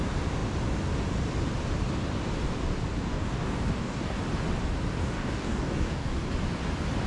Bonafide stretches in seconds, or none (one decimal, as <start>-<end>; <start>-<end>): 0.0-3.1; 4.2-5.0; 6.3-7.1